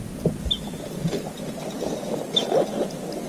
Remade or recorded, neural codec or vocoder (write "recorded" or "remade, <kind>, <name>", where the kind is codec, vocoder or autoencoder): recorded